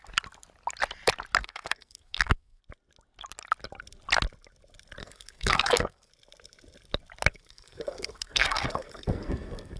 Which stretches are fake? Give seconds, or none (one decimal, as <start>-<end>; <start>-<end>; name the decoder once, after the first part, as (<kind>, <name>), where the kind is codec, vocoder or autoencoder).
1.4-2.6 (codec, SNAC); 5.0-6.1; 7.3-9.8